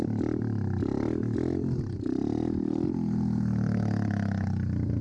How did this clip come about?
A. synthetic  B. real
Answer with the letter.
B